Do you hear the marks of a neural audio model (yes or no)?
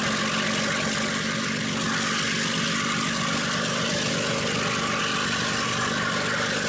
no